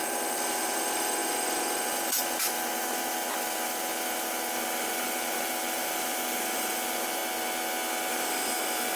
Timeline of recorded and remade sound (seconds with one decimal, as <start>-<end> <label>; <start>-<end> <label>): 0.0-7.2 remade; 7.2-8.1 recorded; 8.1-8.9 remade